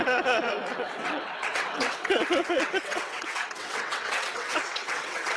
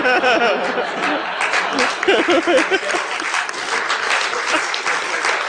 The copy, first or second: first